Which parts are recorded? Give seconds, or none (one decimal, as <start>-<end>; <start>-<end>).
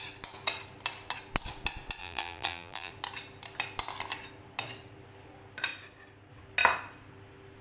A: 0.0-2.0; 2.9-7.6